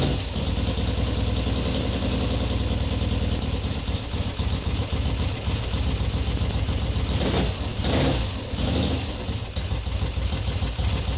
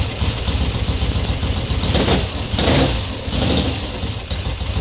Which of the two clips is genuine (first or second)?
first